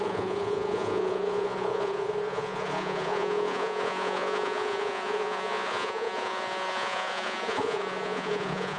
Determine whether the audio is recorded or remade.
remade